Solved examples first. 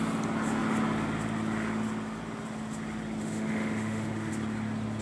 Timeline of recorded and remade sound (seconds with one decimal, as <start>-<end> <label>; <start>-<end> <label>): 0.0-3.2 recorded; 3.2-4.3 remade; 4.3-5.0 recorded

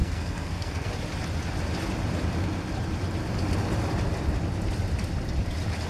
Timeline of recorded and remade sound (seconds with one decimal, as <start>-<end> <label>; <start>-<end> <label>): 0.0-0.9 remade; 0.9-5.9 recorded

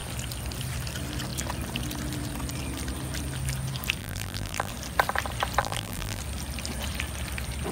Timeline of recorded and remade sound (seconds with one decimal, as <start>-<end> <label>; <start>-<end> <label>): 0.0-4.0 recorded; 4.0-4.7 remade; 4.7-5.6 recorded; 5.6-6.2 remade; 6.2-7.7 recorded

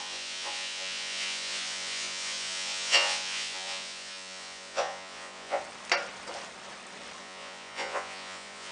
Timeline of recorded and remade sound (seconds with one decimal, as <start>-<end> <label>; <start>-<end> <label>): 0.0-5.6 remade; 5.6-7.2 recorded; 7.2-8.7 remade

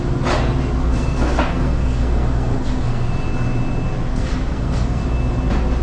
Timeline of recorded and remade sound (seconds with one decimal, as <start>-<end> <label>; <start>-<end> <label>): 0.0-0.8 recorded; 0.8-3.1 remade; 3.1-4.1 recorded; 4.1-5.0 remade; 5.0-5.8 recorded